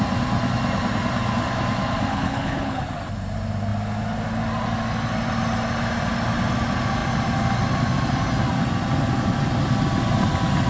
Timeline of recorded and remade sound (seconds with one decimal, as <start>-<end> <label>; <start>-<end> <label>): 0.0-2.1 recorded; 2.1-2.8 remade; 2.8-10.7 recorded